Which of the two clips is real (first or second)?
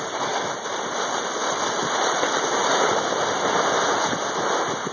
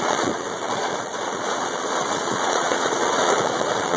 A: first